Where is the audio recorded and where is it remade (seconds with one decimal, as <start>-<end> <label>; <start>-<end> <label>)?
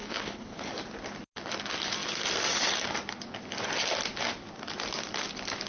0.0-0.7 remade; 0.7-5.7 recorded